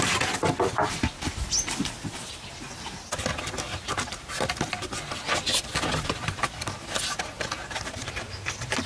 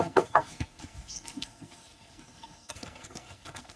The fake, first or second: second